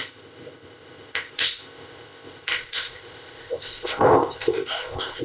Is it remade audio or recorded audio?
remade